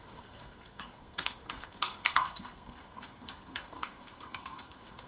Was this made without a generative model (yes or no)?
no